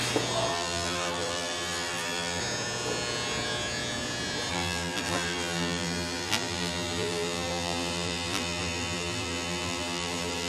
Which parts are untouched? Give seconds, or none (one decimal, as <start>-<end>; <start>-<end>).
0.0-0.5; 2.4-4.5